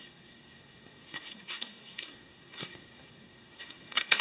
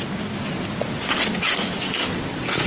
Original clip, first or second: second